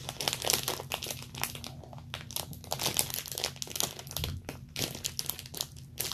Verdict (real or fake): real